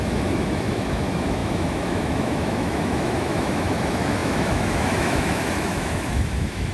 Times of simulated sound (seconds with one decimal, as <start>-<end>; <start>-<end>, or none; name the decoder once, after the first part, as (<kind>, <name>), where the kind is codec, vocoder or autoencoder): 0.0-6.7 (autoencoder, DAC-VAE)